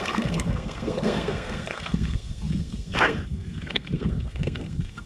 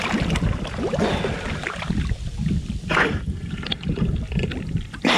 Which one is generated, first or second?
first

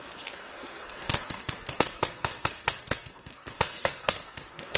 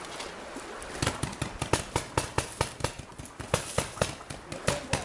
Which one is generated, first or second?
first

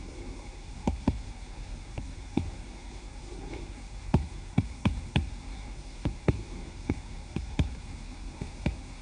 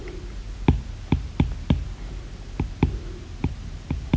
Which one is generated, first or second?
first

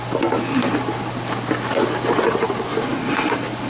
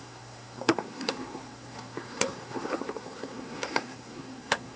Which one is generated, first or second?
second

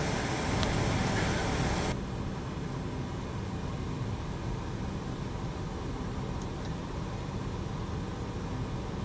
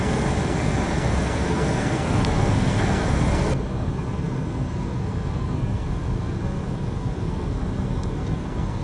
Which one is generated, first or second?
second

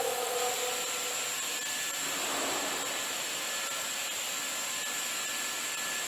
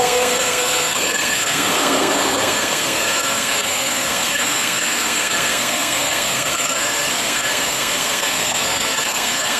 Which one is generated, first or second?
second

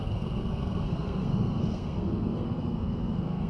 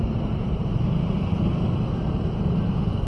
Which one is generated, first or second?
first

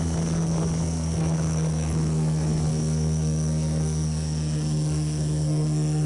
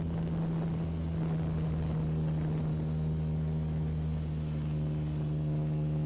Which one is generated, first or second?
first